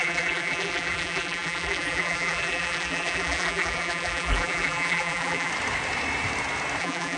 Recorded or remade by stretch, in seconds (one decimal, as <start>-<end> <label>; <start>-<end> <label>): 0.0-5.5 remade; 5.5-6.8 recorded; 6.8-7.2 remade